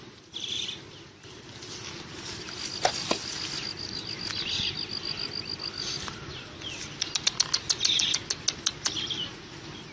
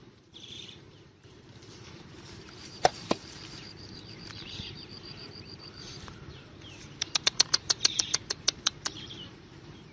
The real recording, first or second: first